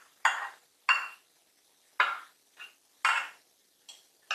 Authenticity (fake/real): real